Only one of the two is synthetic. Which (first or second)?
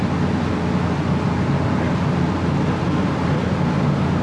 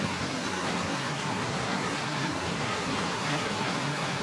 second